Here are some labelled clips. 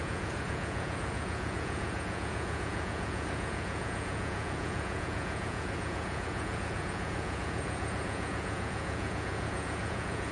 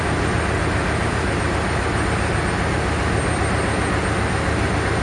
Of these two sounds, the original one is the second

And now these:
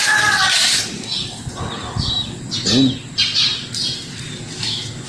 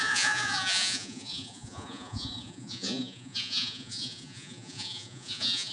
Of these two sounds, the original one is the first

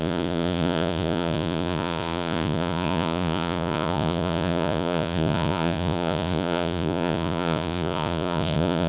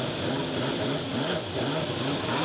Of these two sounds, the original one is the second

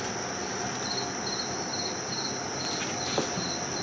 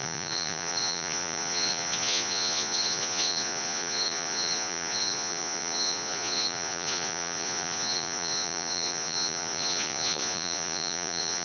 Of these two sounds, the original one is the first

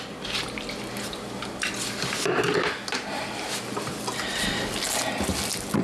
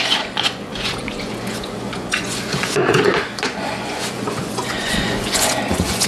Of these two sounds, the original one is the first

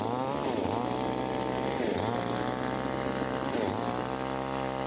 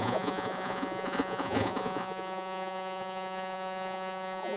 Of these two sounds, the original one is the first